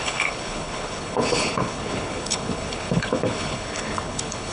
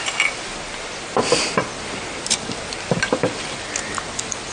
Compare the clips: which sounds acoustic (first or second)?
second